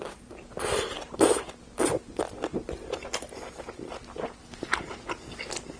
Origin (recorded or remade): recorded